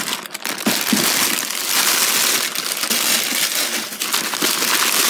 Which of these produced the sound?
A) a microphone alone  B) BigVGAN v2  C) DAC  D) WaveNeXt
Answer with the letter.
A